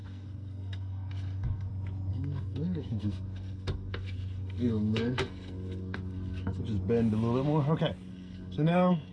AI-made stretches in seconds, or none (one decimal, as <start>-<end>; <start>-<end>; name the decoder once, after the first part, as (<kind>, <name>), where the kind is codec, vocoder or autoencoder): 0.0-1.7 (codec, SNAC); 2.1-6.6; 8.1-9.1